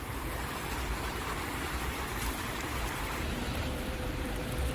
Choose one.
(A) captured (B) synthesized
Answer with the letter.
B